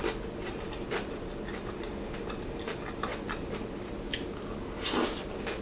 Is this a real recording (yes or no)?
yes